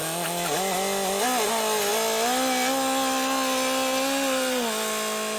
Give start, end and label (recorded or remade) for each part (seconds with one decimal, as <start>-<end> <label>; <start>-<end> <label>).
0.0-5.4 recorded